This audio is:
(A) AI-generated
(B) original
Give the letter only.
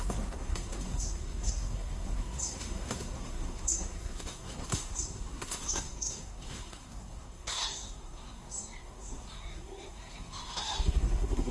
A